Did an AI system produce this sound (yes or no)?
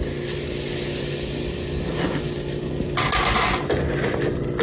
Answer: no